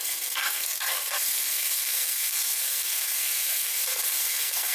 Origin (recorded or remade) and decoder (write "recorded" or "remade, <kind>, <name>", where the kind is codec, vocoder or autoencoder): remade, codec, SNAC